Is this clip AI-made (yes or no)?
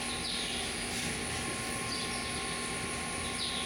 no